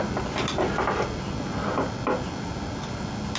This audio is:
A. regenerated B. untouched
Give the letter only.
B